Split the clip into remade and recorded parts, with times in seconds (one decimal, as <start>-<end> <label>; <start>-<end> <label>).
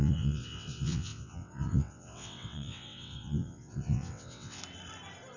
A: 0.0-4.6 remade; 4.6-5.4 recorded